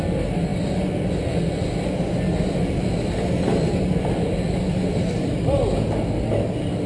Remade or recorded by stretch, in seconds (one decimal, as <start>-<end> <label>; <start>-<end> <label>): 0.0-6.9 recorded